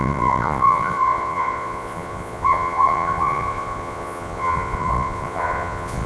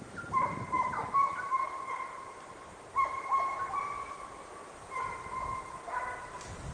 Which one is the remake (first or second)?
first